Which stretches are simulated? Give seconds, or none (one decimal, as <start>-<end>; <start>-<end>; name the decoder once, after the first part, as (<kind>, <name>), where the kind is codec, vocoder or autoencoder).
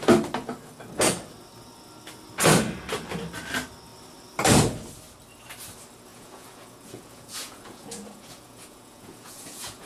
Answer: 6.1-9.9 (vocoder, Vocos)